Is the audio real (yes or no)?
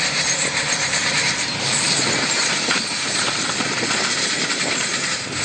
no